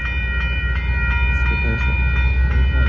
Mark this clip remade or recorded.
recorded